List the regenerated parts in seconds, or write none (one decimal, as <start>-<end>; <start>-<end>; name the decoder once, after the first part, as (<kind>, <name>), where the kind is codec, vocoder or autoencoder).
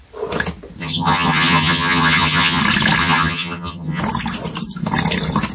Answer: 0.8-2.6 (vocoder, HiFi-GAN); 3.0-4.0